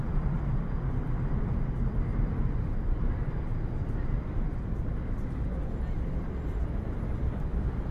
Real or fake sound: real